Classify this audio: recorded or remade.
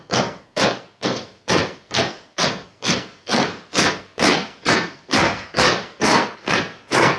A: remade